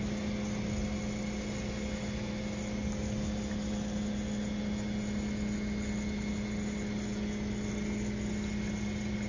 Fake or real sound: real